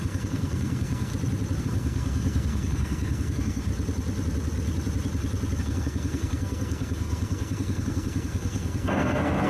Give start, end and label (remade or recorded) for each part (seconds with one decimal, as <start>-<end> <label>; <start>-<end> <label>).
0.0-1.1 remade; 1.1-1.6 recorded; 1.6-3.7 remade; 3.7-5.6 recorded; 5.6-9.5 remade